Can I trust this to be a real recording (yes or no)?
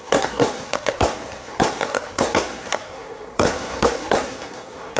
no